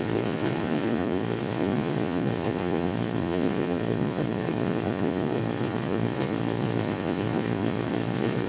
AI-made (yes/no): yes